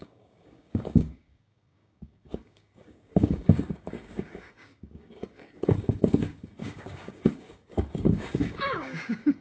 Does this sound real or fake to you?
fake